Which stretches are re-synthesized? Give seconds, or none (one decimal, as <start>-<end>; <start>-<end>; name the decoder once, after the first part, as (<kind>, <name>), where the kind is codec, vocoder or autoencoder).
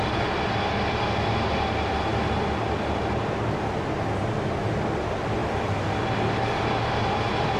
none